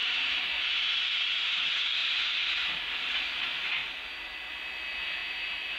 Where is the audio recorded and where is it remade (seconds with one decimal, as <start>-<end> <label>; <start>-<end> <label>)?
0.0-1.1 remade; 1.1-5.2 recorded; 5.2-5.8 remade